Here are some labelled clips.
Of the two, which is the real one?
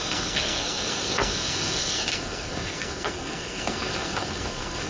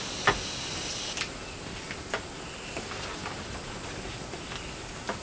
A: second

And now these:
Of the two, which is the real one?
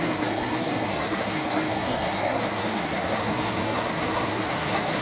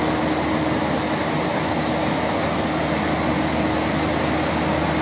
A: second